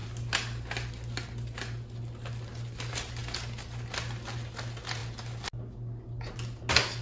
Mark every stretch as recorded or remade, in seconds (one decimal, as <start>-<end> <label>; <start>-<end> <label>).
0.0-7.0 recorded